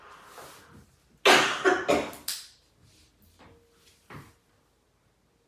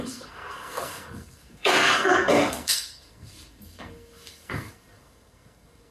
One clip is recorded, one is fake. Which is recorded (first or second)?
first